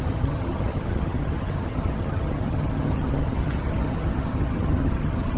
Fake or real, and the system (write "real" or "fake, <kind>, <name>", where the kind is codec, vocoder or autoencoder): fake, vocoder, HiFi-GAN